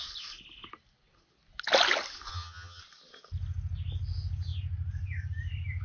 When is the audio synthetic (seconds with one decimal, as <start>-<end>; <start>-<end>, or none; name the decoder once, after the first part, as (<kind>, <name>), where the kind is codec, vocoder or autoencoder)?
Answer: 2.3-2.8 (vocoder, HiFi-GAN)